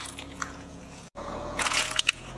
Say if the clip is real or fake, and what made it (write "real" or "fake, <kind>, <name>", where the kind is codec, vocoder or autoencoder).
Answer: fake, vocoder, Vocos